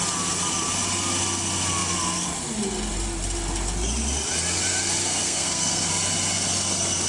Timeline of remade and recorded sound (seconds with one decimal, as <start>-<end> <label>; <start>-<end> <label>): 0.0-5.0 recorded; 5.0-5.9 remade; 5.9-7.1 recorded